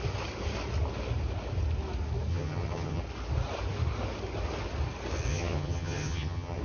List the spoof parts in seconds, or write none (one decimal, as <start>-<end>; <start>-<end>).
2.3-3.0; 5.3-6.6